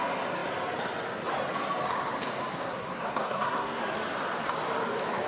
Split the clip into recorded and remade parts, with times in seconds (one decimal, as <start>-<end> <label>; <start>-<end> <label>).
0.0-2.5 recorded; 2.5-3.8 remade; 3.8-5.3 recorded